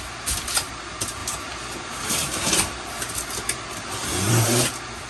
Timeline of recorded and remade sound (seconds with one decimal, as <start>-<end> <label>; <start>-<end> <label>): 0.0-5.1 recorded